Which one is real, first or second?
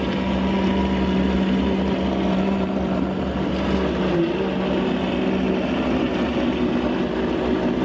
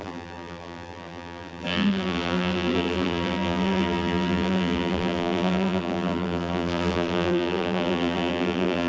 first